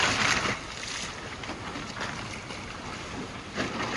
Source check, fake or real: real